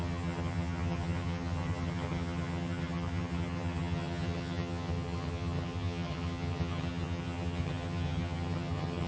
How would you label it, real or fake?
fake